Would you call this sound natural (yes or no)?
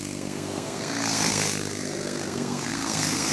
no